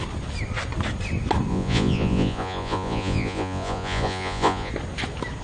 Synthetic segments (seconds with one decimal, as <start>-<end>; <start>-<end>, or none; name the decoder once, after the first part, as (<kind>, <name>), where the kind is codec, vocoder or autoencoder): 1.5-4.7 (vocoder, Vocos)